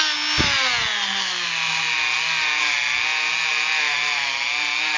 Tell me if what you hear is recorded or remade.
recorded